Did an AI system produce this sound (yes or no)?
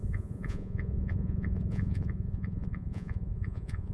yes